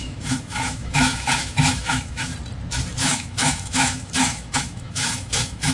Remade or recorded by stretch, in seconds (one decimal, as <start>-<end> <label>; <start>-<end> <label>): 0.0-2.3 remade; 2.3-3.0 recorded; 3.0-5.7 remade